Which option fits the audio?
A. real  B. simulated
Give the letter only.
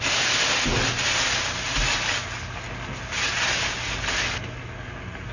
A